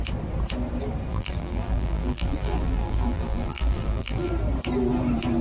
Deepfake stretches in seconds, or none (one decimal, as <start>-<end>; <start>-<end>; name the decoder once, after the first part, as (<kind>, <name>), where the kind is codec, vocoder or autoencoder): 1.1-4.3 (vocoder, BigVGAN v2)